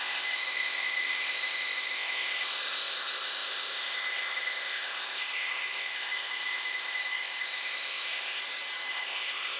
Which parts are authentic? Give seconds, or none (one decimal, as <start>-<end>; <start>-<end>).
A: 8.4-8.9